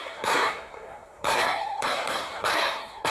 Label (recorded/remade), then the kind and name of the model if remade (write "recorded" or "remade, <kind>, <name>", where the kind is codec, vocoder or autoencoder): remade, codec, SNAC